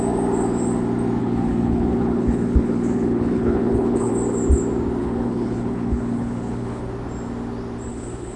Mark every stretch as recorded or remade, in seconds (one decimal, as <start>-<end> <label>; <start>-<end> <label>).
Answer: 0.0-1.2 recorded; 1.2-4.1 remade; 4.1-5.0 recorded; 5.0-6.8 remade; 6.8-7.9 recorded; 7.9-8.4 remade